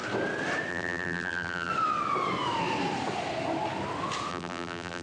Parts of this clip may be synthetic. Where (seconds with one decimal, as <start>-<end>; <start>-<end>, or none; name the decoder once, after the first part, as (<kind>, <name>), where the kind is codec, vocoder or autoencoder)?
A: 0.7-1.7 (vocoder, BigVGAN v2); 4.3-5.0